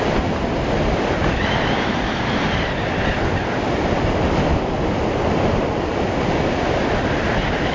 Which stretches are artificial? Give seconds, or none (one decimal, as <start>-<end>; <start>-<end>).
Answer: none